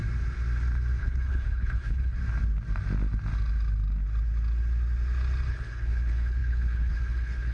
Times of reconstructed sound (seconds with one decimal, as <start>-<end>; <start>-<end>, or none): 1.0-2.2; 5.5-7.5